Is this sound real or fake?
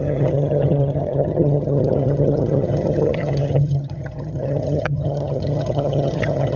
fake